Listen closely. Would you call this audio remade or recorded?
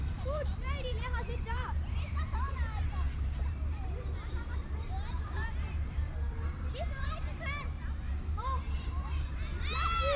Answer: remade